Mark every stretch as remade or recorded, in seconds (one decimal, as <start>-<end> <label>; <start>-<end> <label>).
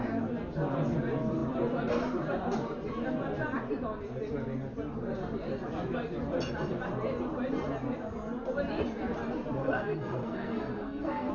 0.0-9.6 recorded; 9.6-11.3 remade